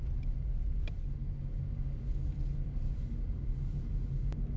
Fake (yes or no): no